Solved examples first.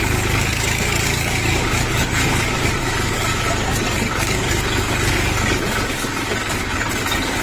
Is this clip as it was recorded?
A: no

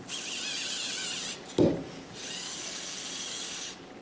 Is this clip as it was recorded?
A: yes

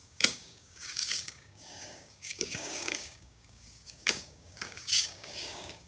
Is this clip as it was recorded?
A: no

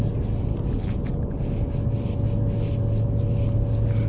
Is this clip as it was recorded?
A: yes